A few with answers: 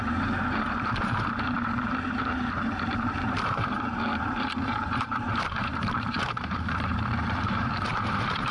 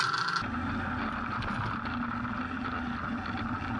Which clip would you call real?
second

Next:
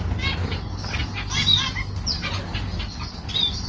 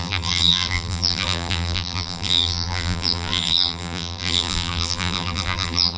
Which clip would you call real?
first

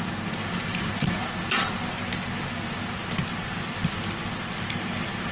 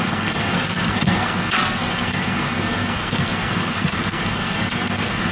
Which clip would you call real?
first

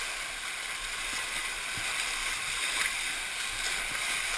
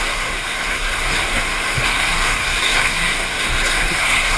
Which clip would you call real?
first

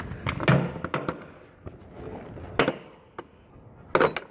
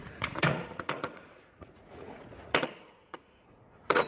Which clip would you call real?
first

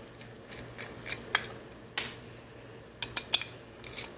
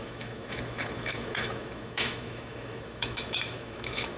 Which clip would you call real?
first